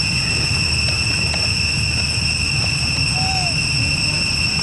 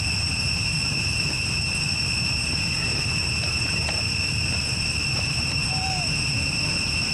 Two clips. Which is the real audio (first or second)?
first